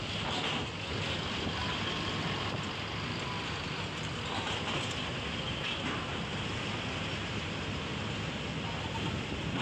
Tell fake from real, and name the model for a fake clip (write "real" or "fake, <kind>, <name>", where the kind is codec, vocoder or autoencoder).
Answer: real